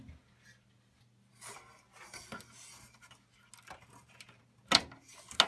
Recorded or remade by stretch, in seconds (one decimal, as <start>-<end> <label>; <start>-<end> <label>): 0.0-5.5 recorded